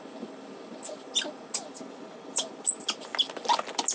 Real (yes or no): yes